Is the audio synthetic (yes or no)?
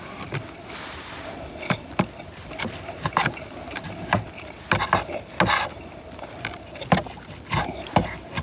no